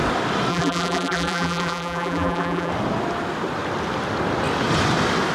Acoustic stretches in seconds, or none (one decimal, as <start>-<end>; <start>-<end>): 0.0-0.5; 2.7-5.3